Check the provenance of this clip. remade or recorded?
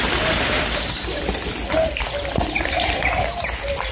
recorded